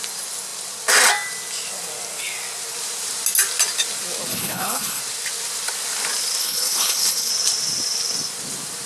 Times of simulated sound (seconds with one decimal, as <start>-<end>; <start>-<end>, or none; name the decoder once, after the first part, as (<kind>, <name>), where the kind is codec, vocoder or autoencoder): 4.3-5.0 (codec, HILCodec); 6.4-7.3